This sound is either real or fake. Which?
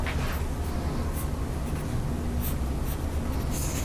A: real